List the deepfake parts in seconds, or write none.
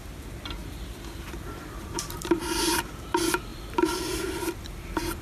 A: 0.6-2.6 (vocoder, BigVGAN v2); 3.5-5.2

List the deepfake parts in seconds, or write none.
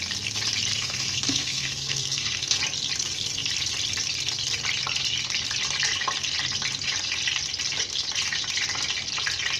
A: 0.7-2.6 (codec, SNAC)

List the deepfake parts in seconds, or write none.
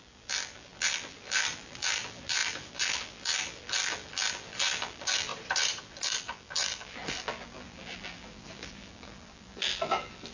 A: 0.0-5.3 (vocoder, BigVGAN v2); 5.8-10.3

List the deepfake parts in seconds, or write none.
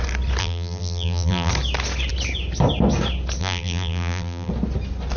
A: 0.4-1.5 (vocoder, BigVGAN v2); 3.4-4.5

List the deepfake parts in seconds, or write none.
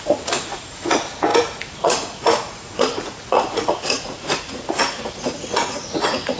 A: 0.0-6.4 (vocoder, Vocos)